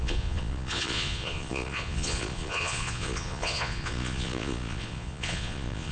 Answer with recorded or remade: remade